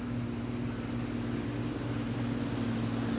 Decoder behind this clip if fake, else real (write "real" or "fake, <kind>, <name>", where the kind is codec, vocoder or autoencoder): real